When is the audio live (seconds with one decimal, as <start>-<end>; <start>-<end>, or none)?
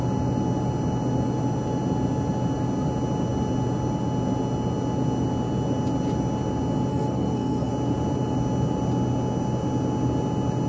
0.0-6.9; 7.7-10.7